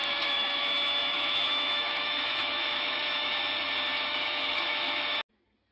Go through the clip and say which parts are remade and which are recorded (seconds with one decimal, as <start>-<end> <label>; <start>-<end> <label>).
0.0-3.4 remade; 3.4-4.1 recorded; 4.1-5.0 remade; 5.0-5.7 recorded